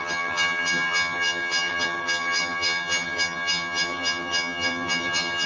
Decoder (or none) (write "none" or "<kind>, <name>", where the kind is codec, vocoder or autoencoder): vocoder, HiFi-GAN